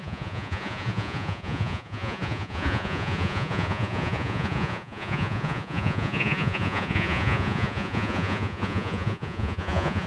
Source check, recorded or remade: remade